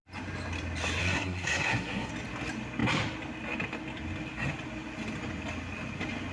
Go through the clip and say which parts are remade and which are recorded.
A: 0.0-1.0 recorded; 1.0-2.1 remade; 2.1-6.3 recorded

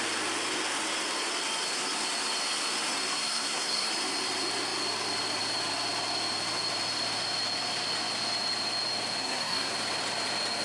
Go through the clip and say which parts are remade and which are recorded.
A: 0.0-3.1 recorded; 3.1-3.9 remade; 3.9-9.2 recorded; 9.2-9.7 remade; 9.7-10.6 recorded

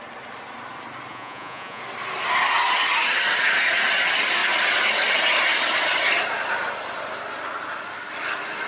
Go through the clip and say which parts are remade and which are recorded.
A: 0.0-1.1 recorded; 1.1-1.8 remade; 1.8-8.7 recorded

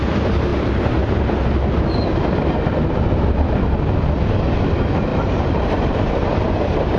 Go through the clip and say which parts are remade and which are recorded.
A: 0.0-5.1 recorded; 5.1-6.2 remade; 6.2-7.0 recorded